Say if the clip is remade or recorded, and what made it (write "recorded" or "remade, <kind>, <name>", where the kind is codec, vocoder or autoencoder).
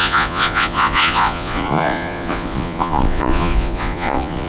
remade, vocoder, Vocos